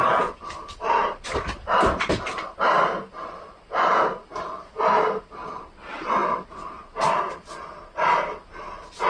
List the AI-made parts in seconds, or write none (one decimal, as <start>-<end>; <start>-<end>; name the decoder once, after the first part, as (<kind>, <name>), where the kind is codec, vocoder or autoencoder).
1.0-5.5 (vocoder, BigVGAN v2)